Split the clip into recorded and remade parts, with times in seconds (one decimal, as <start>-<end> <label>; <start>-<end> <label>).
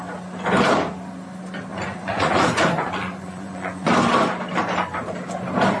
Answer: 0.0-1.7 recorded; 1.7-3.9 remade; 3.9-5.8 recorded